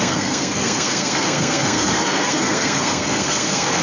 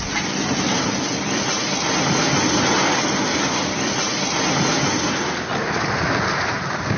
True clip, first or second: second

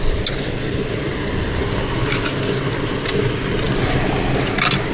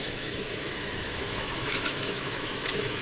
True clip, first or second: first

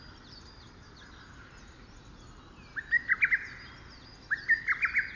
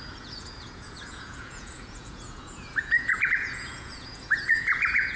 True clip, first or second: first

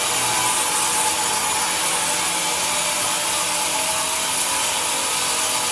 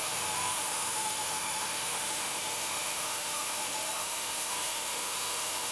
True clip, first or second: first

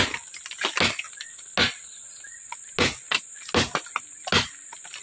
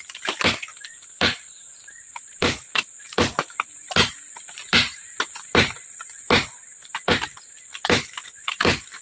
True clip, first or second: first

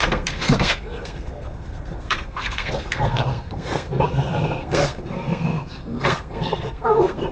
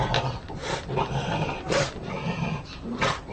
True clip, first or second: second